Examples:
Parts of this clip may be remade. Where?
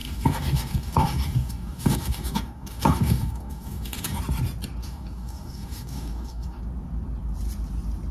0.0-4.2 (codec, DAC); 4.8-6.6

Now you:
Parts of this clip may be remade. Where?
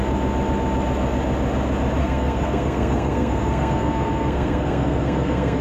2.0-5.6 (codec, SNAC)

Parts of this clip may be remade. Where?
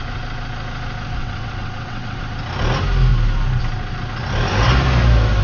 1.2-2.2 (vocoder, WaveNeXt)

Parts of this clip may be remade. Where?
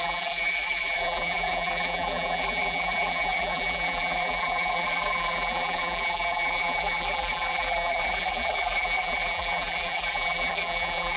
0.0-11.2 (vocoder, BigVGAN v2)